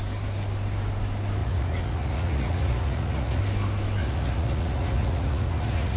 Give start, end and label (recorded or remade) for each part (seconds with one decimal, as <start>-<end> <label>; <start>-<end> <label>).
0.0-1.4 recorded; 1.4-3.4 remade; 3.4-4.0 recorded; 4.0-6.0 remade